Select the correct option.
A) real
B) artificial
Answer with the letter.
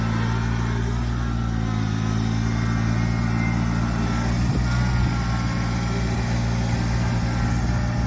A